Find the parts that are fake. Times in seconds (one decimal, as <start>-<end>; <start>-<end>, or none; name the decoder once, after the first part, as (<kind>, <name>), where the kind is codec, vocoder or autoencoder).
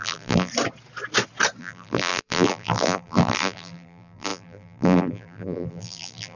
0.0-0.5 (vocoder, BigVGAN v2); 1.6-6.4